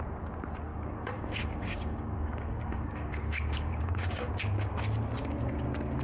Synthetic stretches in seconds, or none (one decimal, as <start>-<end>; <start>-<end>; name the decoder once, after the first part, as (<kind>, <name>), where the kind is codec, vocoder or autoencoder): 0.7-4.3 (codec, DAC)